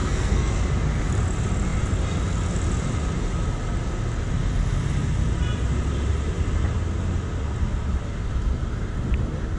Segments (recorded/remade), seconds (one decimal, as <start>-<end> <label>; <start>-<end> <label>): 0.0-0.5 remade; 0.5-9.6 recorded